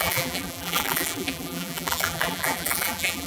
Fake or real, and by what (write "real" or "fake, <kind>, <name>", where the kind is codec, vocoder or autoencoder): fake, vocoder, BigVGAN v2